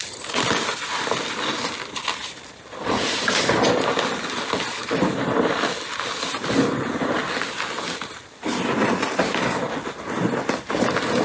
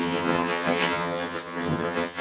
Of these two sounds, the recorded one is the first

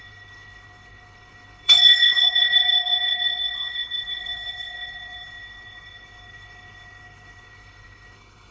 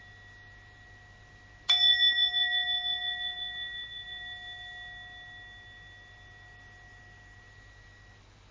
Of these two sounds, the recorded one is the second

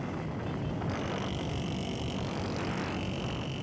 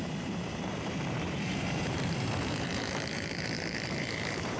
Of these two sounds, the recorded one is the first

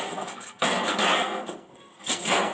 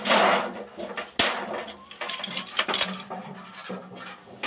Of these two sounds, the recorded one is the second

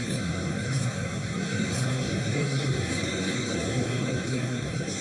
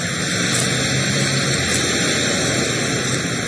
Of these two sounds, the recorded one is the second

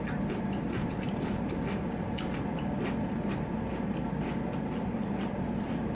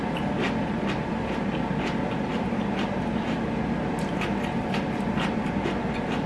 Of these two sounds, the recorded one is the second